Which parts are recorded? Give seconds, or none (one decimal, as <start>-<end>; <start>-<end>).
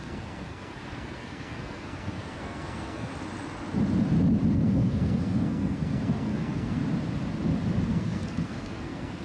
3.1-4.5; 6.8-7.9